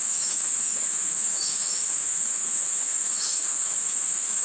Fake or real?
fake